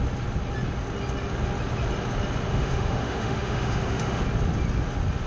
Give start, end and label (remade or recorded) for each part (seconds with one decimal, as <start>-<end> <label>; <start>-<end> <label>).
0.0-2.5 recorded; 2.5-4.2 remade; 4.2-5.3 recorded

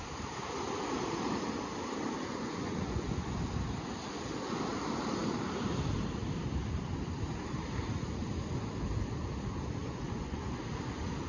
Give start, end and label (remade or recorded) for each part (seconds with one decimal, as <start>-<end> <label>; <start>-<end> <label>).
0.0-2.3 recorded; 2.3-3.3 remade; 3.3-9.8 recorded; 9.8-10.6 remade; 10.6-11.3 recorded

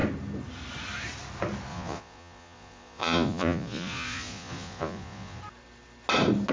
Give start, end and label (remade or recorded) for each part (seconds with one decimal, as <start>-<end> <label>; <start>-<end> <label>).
0.0-1.7 recorded; 1.7-5.4 remade; 5.4-6.5 recorded

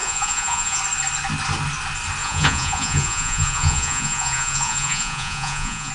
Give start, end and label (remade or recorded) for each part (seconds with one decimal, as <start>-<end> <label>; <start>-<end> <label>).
0.0-0.8 remade; 0.8-2.2 recorded; 2.2-5.9 remade

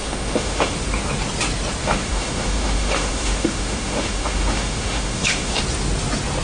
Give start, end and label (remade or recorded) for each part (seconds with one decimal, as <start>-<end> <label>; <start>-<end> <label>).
0.0-0.7 remade; 0.7-1.8 recorded; 1.8-5.6 remade; 5.6-6.4 recorded

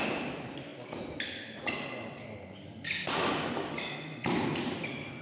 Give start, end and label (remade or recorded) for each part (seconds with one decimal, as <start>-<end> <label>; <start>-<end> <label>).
0.0-5.2 recorded